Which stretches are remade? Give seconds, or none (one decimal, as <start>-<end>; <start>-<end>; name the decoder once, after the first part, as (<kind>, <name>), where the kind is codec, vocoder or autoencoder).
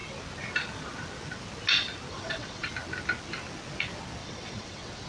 2.1-2.7 (vocoder, WaveNeXt); 4.2-5.1